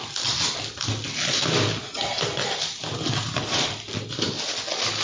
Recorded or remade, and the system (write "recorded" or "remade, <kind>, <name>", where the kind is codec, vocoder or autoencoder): recorded